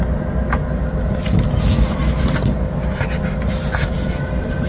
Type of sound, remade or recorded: recorded